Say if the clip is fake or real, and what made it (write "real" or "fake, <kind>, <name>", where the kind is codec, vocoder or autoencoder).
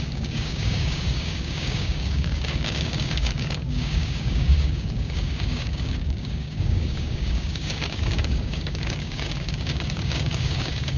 fake, codec, DAC